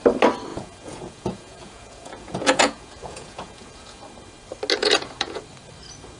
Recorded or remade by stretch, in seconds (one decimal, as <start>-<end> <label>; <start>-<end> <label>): 0.0-0.5 recorded; 0.5-4.0 remade; 4.0-4.8 recorded; 4.8-5.4 remade; 5.4-6.2 recorded